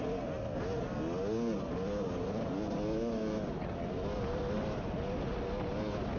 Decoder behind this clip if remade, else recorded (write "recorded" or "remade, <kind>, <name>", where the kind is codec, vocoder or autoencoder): recorded